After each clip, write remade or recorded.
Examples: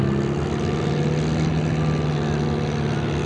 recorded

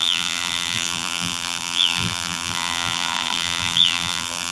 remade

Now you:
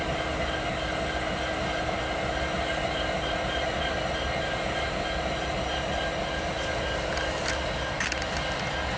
recorded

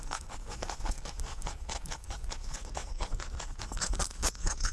remade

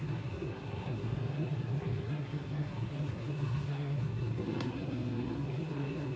remade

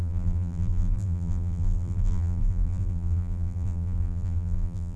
remade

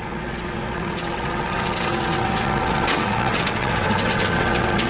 remade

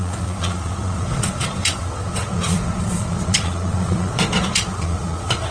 remade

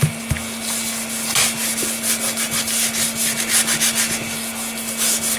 recorded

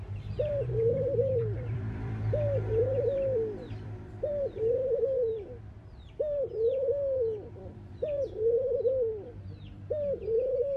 remade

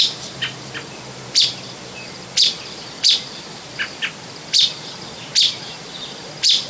remade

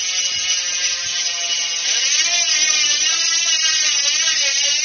recorded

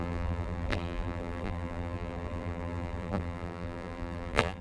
remade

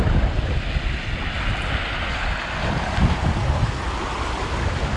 recorded